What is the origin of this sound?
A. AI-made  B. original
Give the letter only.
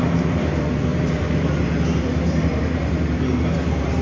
A